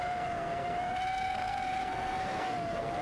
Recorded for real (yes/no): no